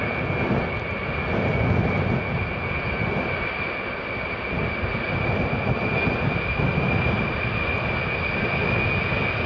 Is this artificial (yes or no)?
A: no